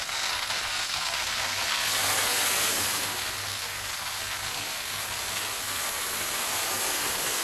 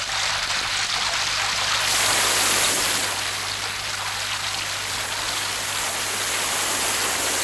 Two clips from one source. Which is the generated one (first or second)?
first